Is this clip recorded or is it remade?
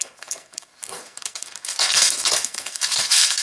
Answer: remade